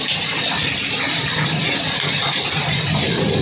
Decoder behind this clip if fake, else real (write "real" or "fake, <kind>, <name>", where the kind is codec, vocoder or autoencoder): real